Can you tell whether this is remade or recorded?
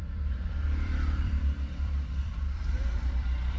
remade